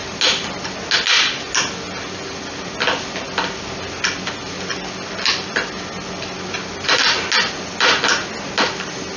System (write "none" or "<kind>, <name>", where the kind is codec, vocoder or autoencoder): none